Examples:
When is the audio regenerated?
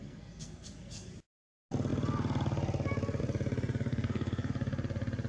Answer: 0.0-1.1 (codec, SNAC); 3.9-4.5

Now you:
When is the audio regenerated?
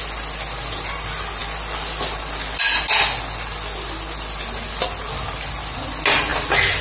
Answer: none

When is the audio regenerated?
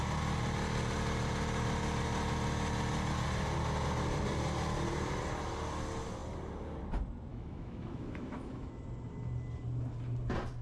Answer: 7.3-8.7 (autoencoder, DAC-VAE)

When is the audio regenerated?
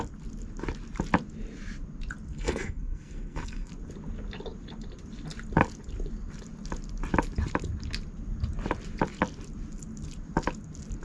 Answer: 2.3-3.7 (codec, SNAC)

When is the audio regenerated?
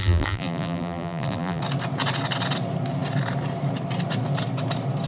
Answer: 0.0-1.6 (vocoder, BigVGAN v2)